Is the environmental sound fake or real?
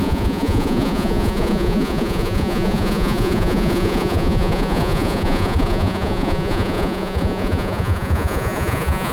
fake